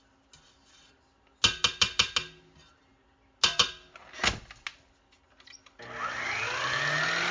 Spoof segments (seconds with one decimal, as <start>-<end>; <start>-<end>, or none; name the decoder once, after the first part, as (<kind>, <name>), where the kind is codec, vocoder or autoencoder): none